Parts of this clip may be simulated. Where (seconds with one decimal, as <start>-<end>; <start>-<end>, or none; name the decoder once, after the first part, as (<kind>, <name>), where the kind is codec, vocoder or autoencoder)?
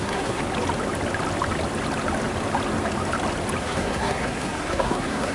0.0-0.4 (codec, SNAC); 3.6-5.3